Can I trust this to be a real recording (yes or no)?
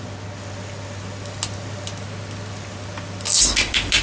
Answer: yes